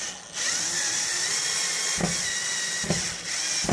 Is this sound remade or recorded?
recorded